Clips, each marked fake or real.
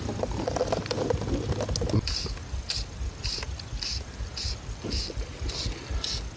real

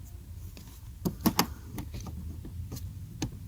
real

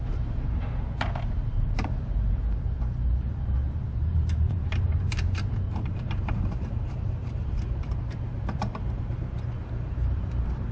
fake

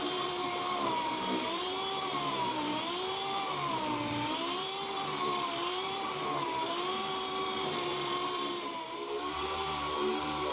fake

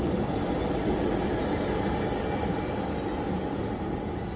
real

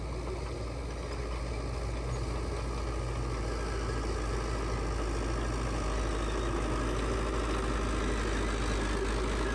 real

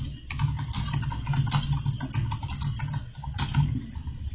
real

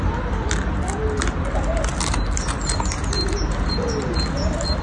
real